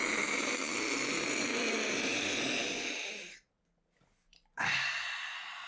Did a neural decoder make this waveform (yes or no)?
no